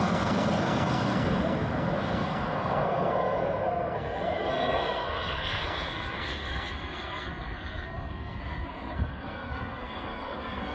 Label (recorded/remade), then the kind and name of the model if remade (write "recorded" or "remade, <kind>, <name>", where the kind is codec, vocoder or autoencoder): remade, codec, SNAC